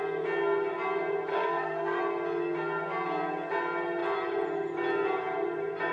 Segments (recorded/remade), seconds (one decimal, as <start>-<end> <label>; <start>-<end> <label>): 0.0-1.3 recorded; 1.3-2.0 remade; 2.0-5.9 recorded